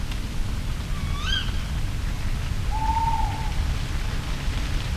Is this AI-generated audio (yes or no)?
no